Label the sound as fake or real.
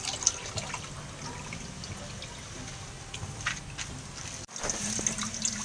real